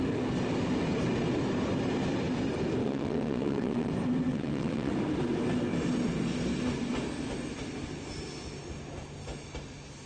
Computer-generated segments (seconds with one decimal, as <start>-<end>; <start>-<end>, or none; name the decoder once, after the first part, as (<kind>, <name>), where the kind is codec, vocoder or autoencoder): 2.8-3.9 (vocoder, WaveNeXt); 4.3-4.9